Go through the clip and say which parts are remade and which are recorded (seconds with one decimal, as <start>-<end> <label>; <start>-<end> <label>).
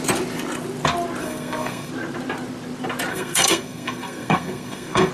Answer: 0.0-1.2 recorded; 1.2-1.9 remade; 1.9-3.1 recorded; 3.1-5.1 remade